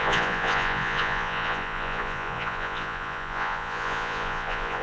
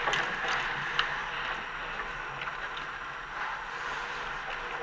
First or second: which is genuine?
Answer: second